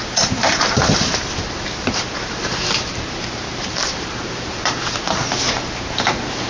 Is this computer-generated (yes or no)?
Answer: yes